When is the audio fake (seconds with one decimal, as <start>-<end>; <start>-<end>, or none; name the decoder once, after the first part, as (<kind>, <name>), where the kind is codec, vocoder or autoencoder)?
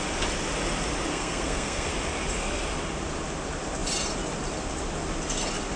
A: 1.1-1.9 (codec, SNAC)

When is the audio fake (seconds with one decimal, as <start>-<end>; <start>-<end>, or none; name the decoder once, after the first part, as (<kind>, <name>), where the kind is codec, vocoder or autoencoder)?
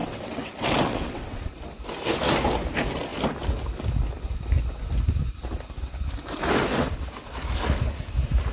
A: 0.0-1.5 (vocoder, WaveNeXt)